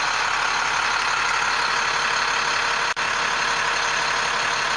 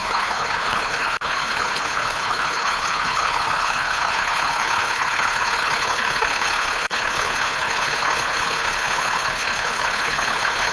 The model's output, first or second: second